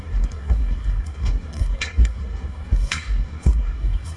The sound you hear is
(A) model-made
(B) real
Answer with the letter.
A